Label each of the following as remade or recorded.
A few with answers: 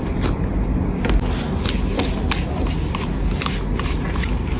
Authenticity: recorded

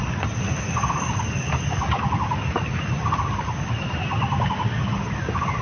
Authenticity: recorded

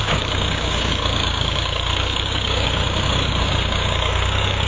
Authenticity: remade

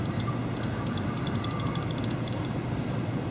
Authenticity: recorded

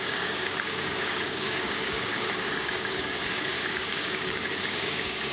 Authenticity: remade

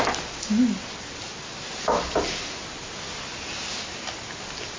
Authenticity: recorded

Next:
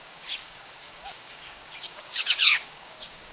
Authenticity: remade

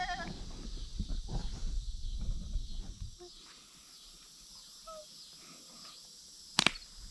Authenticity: recorded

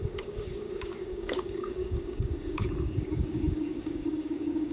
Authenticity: remade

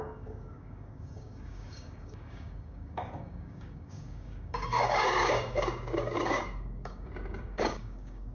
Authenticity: remade